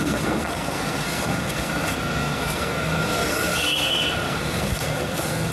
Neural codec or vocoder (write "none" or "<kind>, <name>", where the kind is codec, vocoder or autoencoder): codec, SNAC